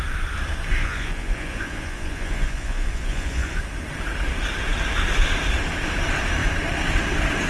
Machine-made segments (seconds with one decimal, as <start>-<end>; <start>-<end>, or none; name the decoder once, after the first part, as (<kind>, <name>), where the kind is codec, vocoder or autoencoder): 0.8-3.6 (vocoder, Vocos)